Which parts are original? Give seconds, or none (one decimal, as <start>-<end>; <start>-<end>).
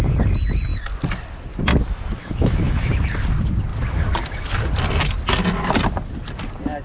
0.0-2.2; 2.9-6.8